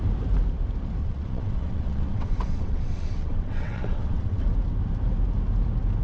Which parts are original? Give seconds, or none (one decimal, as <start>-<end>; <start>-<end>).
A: 0.0-1.0; 4.4-6.0